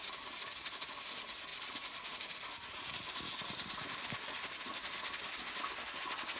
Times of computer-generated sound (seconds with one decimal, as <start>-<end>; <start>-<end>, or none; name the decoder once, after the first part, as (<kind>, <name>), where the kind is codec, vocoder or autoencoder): none